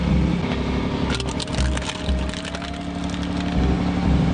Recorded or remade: recorded